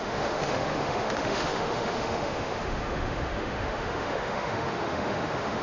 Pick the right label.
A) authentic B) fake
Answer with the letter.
B